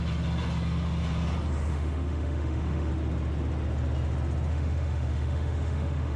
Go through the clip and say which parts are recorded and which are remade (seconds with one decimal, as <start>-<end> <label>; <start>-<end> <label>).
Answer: 0.0-1.7 recorded; 1.7-2.9 remade; 2.9-4.5 recorded; 4.5-6.2 remade